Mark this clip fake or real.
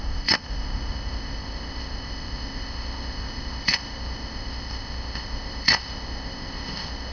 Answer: fake